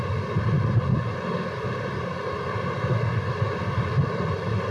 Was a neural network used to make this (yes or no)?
no